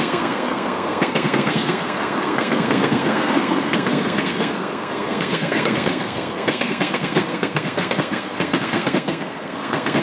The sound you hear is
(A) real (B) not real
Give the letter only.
B